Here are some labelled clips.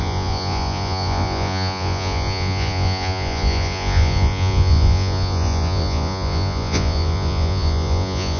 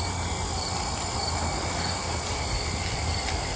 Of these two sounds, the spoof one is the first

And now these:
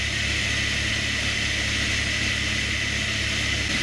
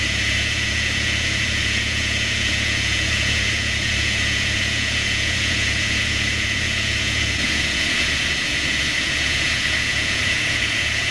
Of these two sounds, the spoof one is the second